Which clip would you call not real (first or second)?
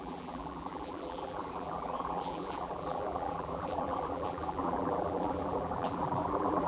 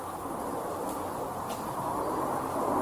first